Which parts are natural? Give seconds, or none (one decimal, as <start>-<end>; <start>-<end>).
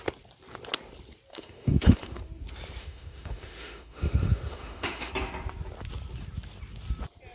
0.0-1.3; 2.2-2.8; 5.1-7.3